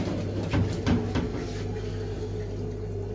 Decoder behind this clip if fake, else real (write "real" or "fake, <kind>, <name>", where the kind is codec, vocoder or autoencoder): real